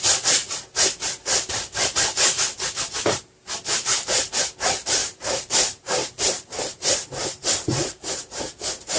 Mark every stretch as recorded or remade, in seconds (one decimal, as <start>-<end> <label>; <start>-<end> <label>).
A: 0.0-3.7 recorded; 3.7-4.3 remade; 4.3-5.0 recorded; 5.0-8.4 remade; 8.4-9.0 recorded